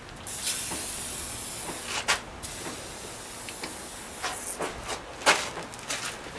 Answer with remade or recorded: recorded